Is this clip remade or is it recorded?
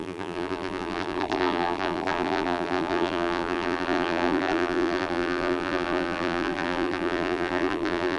remade